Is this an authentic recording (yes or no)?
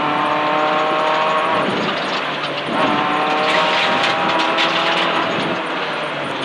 yes